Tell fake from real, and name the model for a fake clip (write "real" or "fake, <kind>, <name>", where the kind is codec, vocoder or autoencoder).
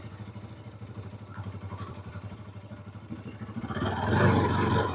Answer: fake, vocoder, BigVGAN v2